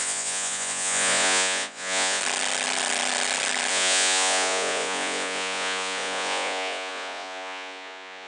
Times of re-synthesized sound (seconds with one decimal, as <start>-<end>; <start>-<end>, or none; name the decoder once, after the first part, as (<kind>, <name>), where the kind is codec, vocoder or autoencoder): 0.0-2.2 (vocoder, Vocos); 3.7-8.3